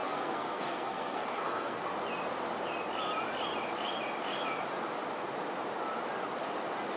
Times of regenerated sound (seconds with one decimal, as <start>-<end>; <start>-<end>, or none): 0.0-1.9